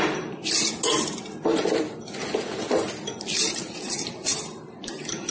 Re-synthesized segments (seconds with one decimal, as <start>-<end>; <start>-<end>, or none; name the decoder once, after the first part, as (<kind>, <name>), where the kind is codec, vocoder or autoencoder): 0.0-0.4 (vocoder, BigVGAN v2); 3.6-5.3